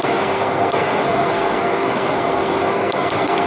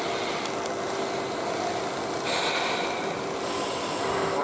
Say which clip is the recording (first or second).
second